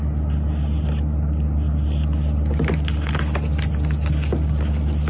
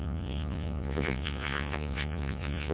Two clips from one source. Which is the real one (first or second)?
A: first